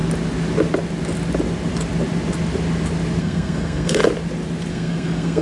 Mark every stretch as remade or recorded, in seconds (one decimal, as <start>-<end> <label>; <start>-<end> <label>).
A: 0.0-3.2 recorded; 3.2-4.0 remade; 4.0-4.7 recorded; 4.7-5.4 remade